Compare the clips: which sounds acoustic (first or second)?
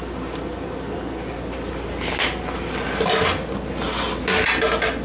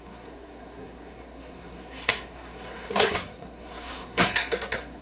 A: first